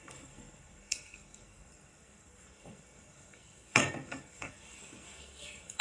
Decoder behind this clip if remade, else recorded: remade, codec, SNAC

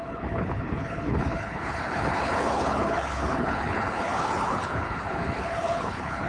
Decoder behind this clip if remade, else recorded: remade, codec, HILCodec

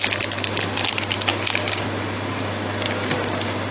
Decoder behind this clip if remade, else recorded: recorded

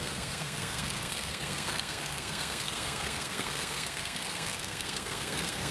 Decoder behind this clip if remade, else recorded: remade, codec, SNAC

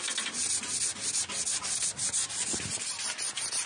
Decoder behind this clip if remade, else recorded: recorded